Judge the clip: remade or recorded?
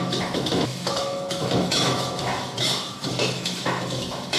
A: remade